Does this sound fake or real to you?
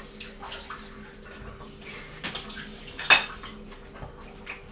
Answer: real